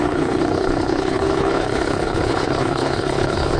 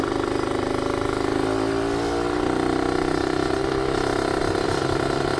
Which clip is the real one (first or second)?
second